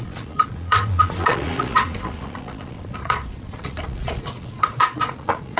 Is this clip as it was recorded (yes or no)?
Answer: no